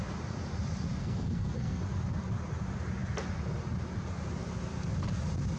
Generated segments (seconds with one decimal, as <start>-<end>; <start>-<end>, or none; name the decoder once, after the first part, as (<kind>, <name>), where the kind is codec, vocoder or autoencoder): 1.0-1.8 (codec, SNAC)

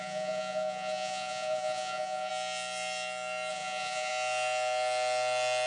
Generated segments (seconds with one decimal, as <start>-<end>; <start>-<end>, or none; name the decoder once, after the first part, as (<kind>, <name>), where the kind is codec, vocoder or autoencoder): 0.0-2.3 (vocoder, Vocos); 3.5-4.1

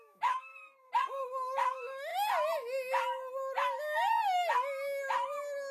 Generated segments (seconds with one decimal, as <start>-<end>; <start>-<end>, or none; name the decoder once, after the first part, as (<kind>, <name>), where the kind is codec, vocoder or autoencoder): 0.0-0.5 (autoencoder, DAC-VAE); 1.2-2.1

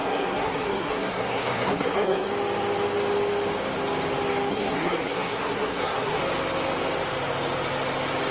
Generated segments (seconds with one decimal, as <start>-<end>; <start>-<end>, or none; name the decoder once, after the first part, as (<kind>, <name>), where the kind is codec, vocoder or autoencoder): 0.0-2.3 (codec, SNAC); 4.5-6.2

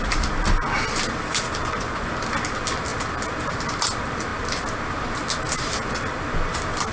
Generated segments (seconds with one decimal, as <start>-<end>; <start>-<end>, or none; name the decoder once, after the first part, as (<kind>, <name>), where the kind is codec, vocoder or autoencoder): 1.6-2.1 (vocoder, Vocos)

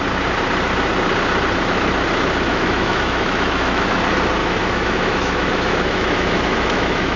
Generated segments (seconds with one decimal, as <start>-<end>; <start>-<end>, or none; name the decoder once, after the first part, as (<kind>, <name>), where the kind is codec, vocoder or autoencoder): 2.5-4.0 (autoencoder, DAC-VAE); 4.4-7.2

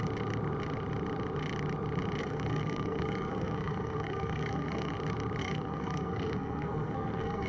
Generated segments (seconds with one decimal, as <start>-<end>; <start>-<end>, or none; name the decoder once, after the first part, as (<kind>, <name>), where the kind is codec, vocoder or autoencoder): 2.2-4.9 (codec, SNAC); 5.4-7.5